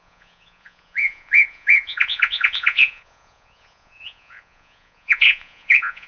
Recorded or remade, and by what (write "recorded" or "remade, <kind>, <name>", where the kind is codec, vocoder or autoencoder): remade, vocoder, Vocos